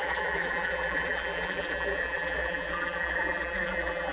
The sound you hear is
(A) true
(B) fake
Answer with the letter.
B